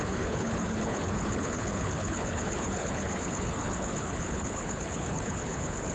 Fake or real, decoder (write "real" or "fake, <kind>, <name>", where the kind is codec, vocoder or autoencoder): fake, codec, HILCodec